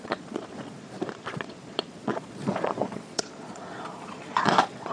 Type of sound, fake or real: fake